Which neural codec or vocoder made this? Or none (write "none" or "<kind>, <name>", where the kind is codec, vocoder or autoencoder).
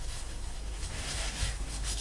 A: codec, SNAC